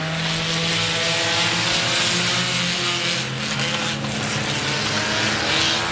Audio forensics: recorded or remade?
recorded